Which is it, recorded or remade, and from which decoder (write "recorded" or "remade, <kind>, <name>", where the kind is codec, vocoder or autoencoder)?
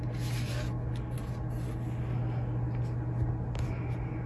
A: recorded